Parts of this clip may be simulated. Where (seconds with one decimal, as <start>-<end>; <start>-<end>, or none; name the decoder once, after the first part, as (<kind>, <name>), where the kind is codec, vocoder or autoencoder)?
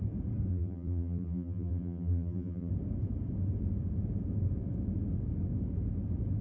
0.5-2.7 (vocoder, BigVGAN v2)